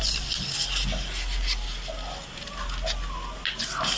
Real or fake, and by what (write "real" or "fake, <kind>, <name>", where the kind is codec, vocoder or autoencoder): real